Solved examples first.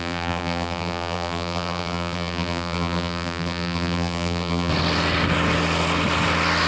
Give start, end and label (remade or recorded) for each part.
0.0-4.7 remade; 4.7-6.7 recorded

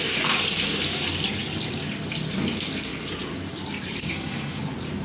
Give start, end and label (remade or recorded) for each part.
0.0-4.1 recorded; 4.1-4.6 remade; 4.6-5.0 recorded